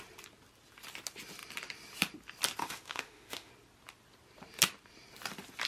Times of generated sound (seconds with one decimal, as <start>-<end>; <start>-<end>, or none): 2.6-3.5